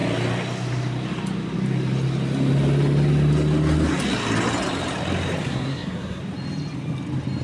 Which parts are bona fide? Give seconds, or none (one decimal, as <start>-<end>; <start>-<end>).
0.0-5.4; 6.2-7.4